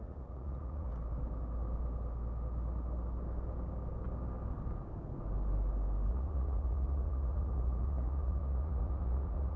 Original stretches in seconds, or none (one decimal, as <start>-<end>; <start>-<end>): 0.9-6.1